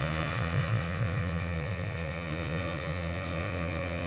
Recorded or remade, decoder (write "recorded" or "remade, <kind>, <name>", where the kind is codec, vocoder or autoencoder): remade, vocoder, Vocos